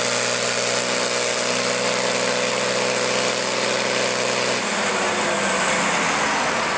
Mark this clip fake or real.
real